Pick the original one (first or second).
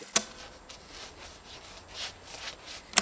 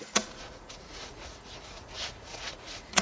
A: first